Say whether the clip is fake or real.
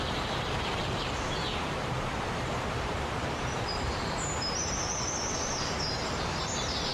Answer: fake